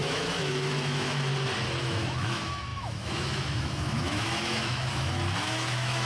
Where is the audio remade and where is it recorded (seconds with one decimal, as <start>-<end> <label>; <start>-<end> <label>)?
0.0-1.3 remade; 1.3-1.8 recorded; 1.8-6.1 remade